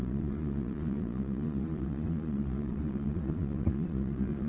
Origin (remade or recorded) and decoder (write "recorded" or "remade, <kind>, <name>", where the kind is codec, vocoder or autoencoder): remade, vocoder, Vocos